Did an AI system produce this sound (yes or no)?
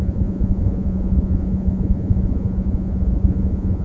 yes